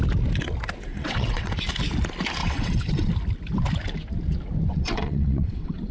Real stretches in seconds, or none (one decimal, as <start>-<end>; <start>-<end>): 0.0-0.9; 1.5-2.4; 3.1-4.7